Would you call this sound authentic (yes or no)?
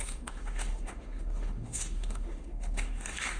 no